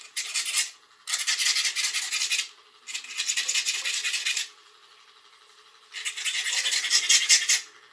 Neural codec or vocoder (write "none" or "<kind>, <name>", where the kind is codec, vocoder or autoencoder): none